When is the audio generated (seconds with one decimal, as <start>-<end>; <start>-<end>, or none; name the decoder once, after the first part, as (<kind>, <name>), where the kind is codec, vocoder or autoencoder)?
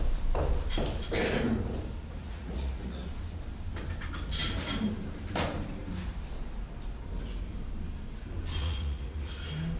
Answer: 2.2-3.1 (vocoder, Vocos); 8.6-9.4